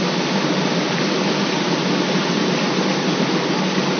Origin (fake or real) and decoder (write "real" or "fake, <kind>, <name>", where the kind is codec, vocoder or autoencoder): real